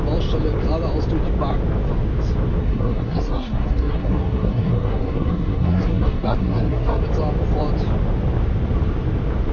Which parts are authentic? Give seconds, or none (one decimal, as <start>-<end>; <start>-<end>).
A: 0.0-2.6; 7.0-9.5